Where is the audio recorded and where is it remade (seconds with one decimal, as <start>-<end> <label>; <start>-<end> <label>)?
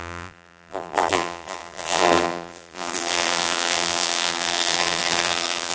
0.0-5.7 remade